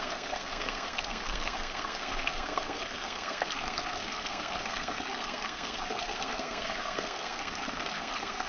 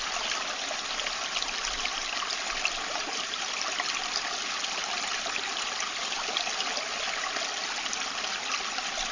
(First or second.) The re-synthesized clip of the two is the first